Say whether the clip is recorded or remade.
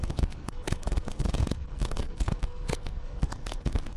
remade